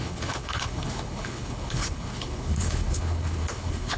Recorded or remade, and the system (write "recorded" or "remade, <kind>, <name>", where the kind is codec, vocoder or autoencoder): remade, codec, HILCodec